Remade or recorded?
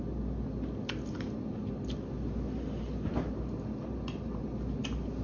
recorded